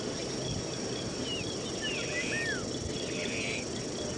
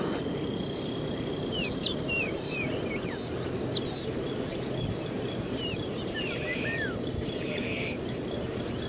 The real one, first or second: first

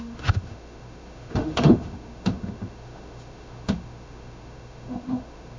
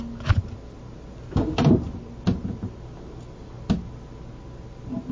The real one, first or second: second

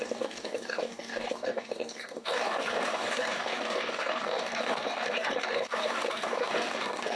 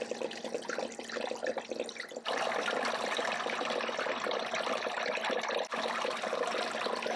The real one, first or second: second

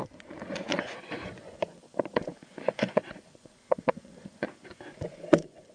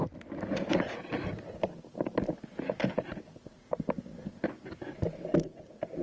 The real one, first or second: second